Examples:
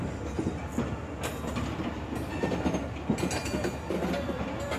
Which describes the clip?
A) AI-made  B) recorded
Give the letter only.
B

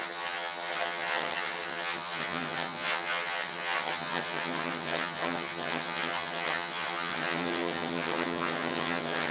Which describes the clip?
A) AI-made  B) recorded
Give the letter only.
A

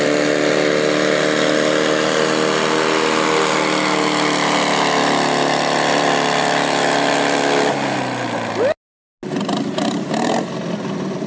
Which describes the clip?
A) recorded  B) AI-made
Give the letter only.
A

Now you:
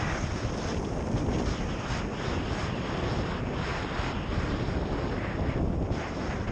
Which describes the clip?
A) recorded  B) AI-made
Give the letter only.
A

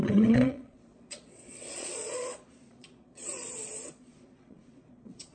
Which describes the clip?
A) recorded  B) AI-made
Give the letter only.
B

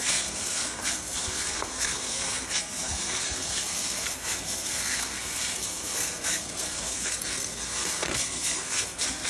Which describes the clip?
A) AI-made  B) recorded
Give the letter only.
A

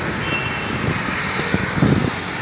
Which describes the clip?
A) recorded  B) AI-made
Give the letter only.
A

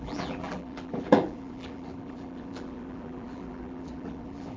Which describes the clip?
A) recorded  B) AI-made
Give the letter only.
B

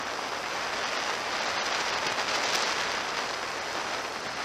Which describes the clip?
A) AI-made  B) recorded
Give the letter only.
B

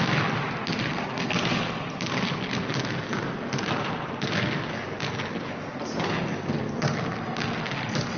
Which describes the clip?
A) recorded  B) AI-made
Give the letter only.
A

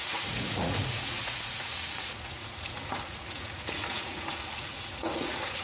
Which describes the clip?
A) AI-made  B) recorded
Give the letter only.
A